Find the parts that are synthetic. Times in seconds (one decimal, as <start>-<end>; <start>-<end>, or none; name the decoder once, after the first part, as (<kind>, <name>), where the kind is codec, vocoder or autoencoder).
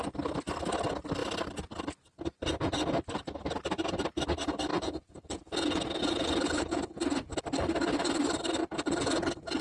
4.7-7.4 (vocoder, Vocos); 8.6-9.6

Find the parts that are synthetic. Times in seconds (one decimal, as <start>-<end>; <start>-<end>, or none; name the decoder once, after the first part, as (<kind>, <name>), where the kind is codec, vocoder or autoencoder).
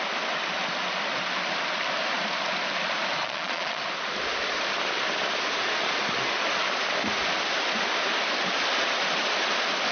3.2-3.8 (vocoder, Vocos)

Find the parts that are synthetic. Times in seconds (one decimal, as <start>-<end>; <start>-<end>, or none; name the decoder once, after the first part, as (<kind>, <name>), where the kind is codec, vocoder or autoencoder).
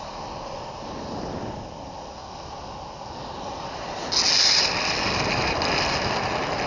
none